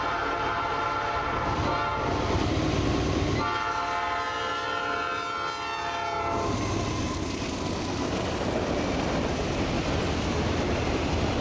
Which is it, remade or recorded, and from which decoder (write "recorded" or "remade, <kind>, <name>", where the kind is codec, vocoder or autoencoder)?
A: recorded